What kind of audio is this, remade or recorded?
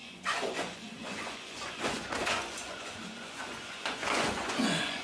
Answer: remade